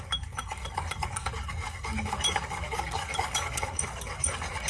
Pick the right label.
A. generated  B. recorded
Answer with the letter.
A